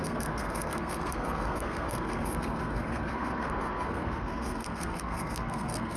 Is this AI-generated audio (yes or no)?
yes